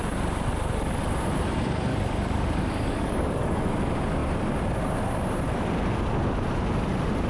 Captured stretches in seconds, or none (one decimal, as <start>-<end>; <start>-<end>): 0.0-1.9; 3.7-7.3